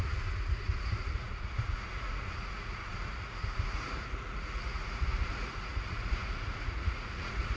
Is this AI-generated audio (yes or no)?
yes